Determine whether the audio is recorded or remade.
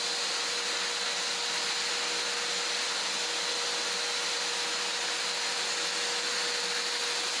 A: recorded